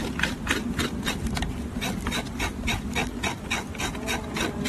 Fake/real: real